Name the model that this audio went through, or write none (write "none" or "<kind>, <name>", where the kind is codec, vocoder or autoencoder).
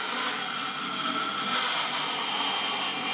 none